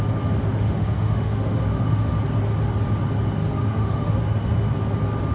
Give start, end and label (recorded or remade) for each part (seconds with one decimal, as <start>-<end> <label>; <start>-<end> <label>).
0.0-0.4 recorded; 0.4-2.1 remade; 2.1-3.4 recorded; 3.4-4.2 remade; 4.2-5.3 recorded